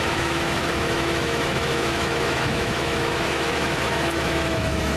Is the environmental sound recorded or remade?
remade